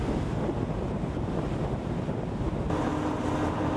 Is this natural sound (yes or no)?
yes